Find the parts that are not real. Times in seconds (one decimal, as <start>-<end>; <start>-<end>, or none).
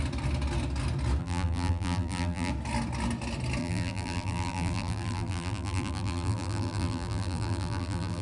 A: 1.2-2.5; 3.6-8.2